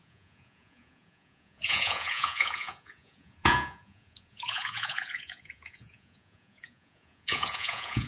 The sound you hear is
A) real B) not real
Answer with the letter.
B